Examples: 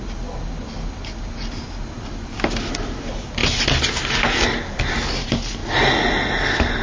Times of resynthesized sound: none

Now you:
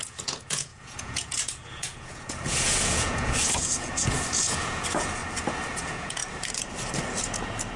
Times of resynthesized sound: 0.0-5.2; 5.7-6.2; 7.2-7.8